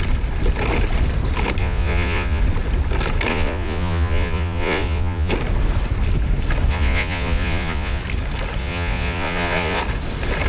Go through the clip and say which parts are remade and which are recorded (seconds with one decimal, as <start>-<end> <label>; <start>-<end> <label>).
0.0-1.6 recorded; 1.6-2.4 remade; 2.4-3.3 recorded; 3.3-5.3 remade; 5.3-6.7 recorded; 6.7-8.0 remade; 8.0-8.6 recorded; 8.6-9.8 remade; 9.8-10.5 recorded